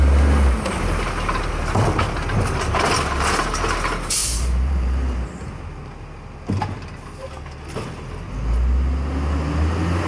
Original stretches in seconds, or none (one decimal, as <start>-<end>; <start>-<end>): 0.0-4.2; 5.3-10.1